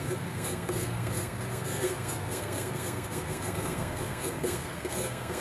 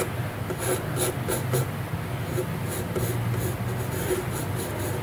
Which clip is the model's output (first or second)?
first